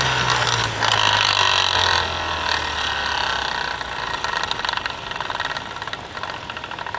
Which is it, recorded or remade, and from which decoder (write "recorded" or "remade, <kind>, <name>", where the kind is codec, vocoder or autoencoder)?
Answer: recorded